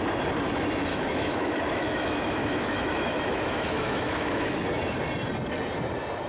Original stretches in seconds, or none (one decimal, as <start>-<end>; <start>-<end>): 0.0-0.9; 4.6-6.3